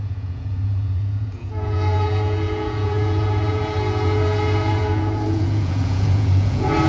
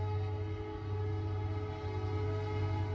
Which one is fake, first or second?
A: first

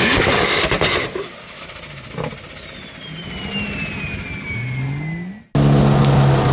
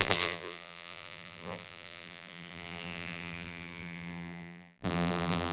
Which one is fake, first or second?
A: second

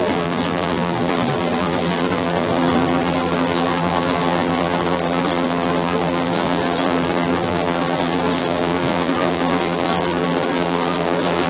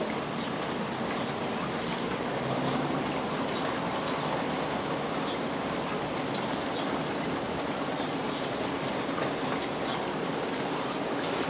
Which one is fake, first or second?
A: first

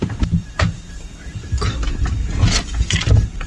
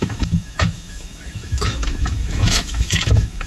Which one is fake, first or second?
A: second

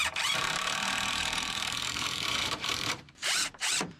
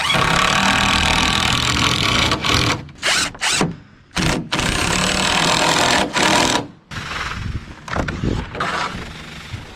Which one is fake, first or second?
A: first